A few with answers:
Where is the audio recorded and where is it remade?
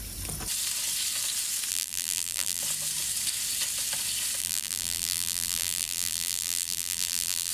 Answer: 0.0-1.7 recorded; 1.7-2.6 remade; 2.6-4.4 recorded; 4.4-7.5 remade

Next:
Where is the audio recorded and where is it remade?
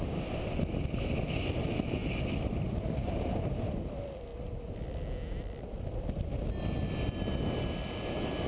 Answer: 0.0-8.5 recorded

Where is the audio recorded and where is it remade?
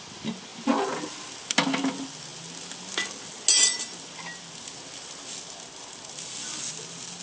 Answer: 0.0-7.2 recorded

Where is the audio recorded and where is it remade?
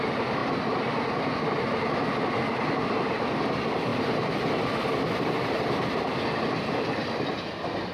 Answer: 0.0-7.9 recorded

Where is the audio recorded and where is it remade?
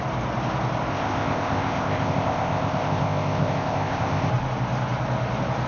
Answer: 0.0-0.9 recorded; 0.9-4.3 remade; 4.3-5.7 recorded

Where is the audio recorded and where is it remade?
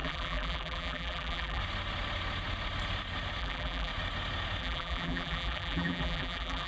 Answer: 0.0-1.6 remade; 1.6-3.4 recorded; 3.4-3.9 remade; 3.9-4.6 recorded; 4.6-6.7 remade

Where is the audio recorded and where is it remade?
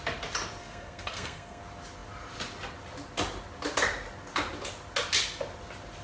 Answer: 0.0-0.6 recorded; 0.6-1.6 remade; 1.6-6.0 recorded